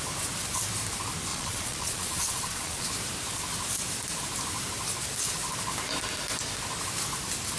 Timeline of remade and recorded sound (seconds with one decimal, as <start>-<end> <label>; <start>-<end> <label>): 0.0-1.3 recorded; 1.3-2.9 remade; 2.9-7.6 recorded